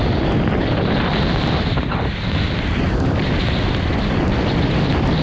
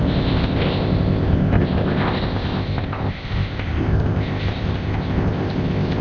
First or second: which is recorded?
first